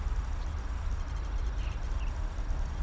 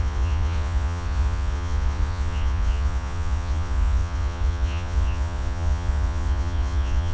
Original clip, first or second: first